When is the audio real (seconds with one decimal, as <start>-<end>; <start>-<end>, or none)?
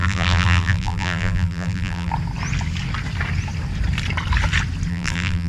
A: 2.1-4.9